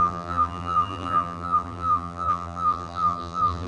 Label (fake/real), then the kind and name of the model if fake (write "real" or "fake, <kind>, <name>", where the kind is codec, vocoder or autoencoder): fake, vocoder, BigVGAN v2